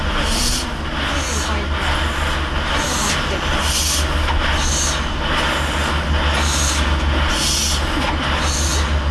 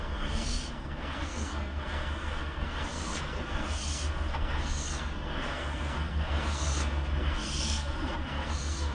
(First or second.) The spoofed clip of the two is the second